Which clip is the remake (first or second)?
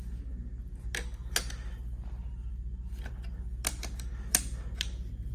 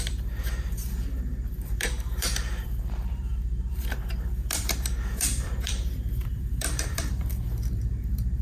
second